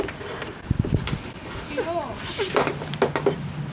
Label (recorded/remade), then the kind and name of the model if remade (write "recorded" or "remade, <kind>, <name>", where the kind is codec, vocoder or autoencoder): recorded